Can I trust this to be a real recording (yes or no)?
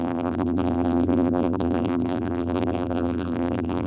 no